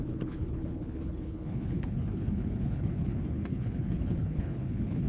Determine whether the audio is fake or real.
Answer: fake